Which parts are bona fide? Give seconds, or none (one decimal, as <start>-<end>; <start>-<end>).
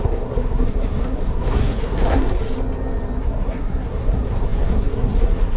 2.4-3.2